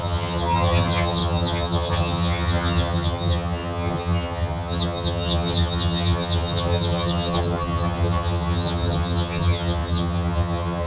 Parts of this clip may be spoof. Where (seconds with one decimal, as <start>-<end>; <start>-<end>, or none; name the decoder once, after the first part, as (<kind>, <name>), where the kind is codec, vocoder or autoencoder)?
0.0-10.9 (vocoder, HiFi-GAN)